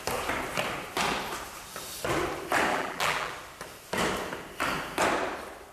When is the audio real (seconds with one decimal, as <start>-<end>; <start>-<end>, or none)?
0.0-2.7; 3.3-5.7